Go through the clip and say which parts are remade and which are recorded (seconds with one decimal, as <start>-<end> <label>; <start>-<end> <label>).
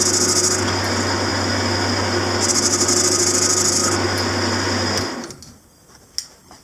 0.0-6.6 recorded